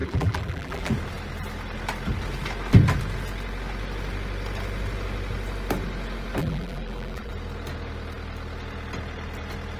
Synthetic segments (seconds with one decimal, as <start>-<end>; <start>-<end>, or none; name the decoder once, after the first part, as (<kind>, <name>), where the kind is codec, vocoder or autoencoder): 0.0-0.9 (vocoder, BigVGAN v2); 6.4-7.3